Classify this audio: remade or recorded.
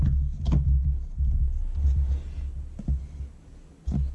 recorded